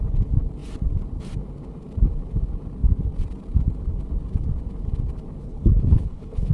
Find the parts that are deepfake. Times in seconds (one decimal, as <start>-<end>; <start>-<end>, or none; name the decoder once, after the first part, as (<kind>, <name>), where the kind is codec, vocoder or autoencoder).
5.4-6.5 (codec, HILCodec)